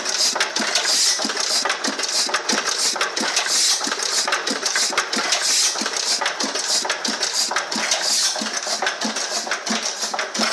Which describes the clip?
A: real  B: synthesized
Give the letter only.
A